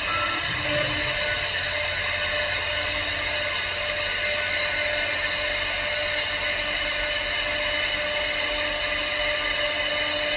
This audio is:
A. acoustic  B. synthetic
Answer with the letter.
A